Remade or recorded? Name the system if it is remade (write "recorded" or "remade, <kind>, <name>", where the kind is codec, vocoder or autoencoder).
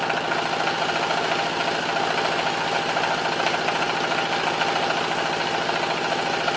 recorded